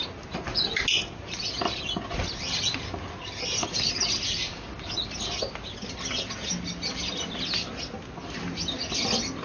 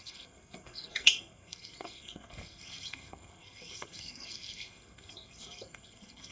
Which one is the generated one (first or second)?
second